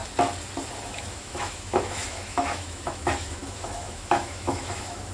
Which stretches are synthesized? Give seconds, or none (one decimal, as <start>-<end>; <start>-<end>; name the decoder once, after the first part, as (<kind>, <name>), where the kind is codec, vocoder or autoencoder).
0.8-5.1 (autoencoder, DAC-VAE)